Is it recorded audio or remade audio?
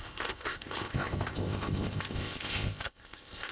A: remade